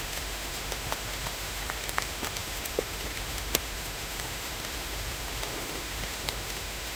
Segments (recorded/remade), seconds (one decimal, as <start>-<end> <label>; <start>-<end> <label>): 0.0-7.0 remade